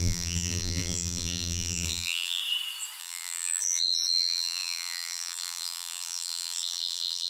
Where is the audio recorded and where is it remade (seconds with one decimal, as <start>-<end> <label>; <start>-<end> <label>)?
0.0-2.4 remade; 2.4-3.0 recorded; 3.0-7.3 remade